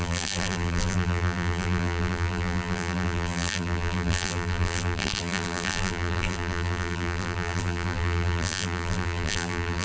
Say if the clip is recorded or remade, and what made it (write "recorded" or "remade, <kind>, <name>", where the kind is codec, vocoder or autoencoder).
remade, vocoder, BigVGAN v2